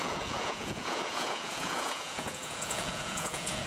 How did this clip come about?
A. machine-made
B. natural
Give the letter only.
A